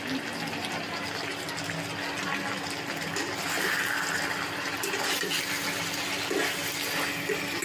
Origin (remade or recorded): recorded